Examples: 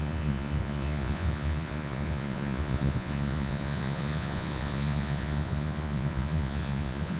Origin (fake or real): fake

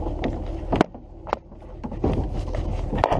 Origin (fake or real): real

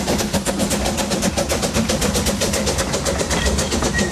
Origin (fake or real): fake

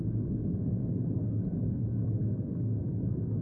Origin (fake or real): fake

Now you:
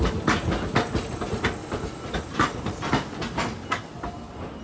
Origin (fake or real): real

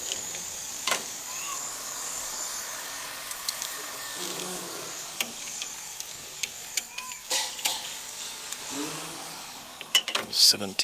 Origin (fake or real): fake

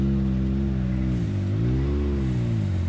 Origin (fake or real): real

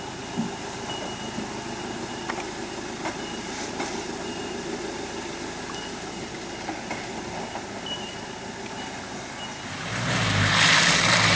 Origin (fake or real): real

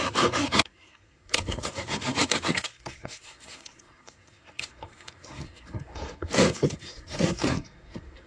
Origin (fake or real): fake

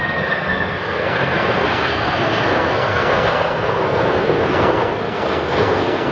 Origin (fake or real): fake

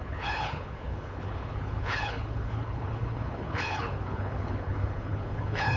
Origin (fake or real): fake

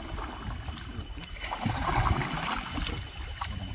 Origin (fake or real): real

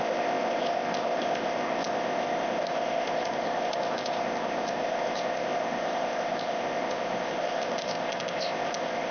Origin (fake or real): fake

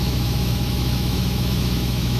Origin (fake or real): fake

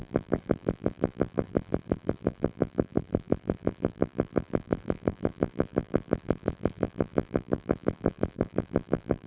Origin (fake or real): fake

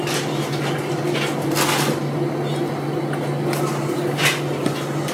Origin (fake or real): real